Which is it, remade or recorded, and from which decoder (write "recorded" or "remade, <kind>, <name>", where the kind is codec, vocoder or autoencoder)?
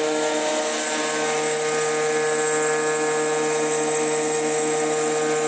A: recorded